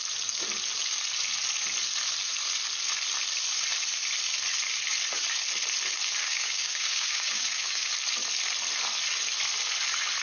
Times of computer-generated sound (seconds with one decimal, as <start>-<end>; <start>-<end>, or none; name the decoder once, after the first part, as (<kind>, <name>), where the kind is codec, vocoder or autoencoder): 6.2-7.9 (codec, DAC)